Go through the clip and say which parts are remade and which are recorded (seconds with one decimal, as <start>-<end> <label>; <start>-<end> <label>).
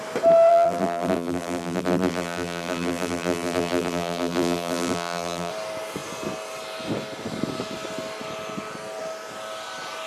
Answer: 0.0-0.5 recorded; 0.5-5.5 remade; 5.5-10.1 recorded